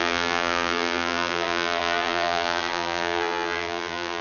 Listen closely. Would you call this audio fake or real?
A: fake